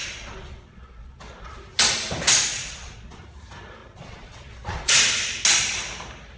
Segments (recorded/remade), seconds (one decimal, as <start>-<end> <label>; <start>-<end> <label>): 0.0-1.6 remade; 1.6-2.5 recorded; 2.5-3.2 remade; 3.2-3.8 recorded; 3.8-5.0 remade; 5.0-6.4 recorded